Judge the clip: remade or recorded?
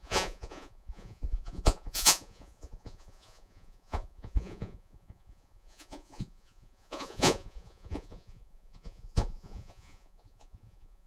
remade